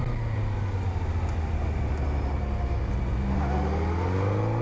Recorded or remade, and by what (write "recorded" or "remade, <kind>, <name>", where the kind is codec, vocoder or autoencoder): recorded